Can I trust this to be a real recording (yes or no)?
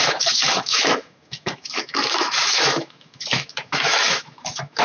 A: no